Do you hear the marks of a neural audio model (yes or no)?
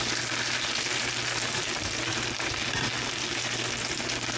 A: no